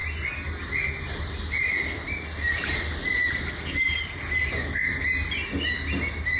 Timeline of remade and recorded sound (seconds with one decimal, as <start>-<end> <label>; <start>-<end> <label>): 0.0-6.4 recorded